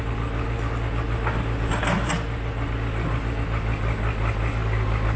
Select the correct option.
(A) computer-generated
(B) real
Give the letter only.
B